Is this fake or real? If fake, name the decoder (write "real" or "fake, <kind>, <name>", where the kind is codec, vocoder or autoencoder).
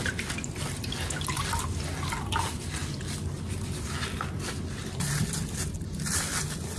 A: real